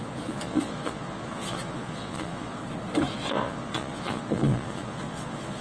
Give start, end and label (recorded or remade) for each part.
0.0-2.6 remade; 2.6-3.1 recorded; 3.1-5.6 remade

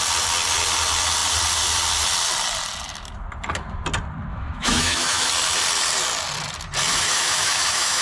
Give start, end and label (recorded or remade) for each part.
0.0-4.3 recorded; 4.3-5.3 remade; 5.3-6.9 recorded; 6.9-8.0 remade

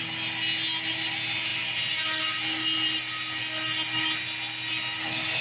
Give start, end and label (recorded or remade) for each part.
0.0-5.4 recorded

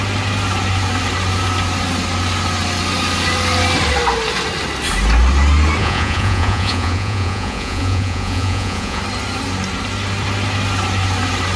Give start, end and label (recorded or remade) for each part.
0.0-5.8 recorded; 5.8-9.0 remade; 9.0-11.6 recorded

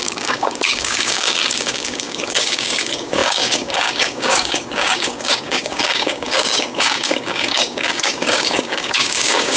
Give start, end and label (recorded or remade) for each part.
0.0-9.6 remade